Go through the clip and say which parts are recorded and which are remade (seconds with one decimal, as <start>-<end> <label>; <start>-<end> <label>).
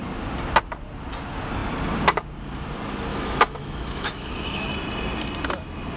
0.0-3.1 recorded; 3.1-4.7 remade; 4.7-6.0 recorded